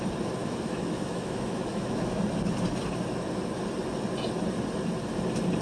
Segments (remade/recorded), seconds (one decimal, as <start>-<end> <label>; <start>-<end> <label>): 0.0-0.4 recorded; 0.4-2.2 remade; 2.2-5.6 recorded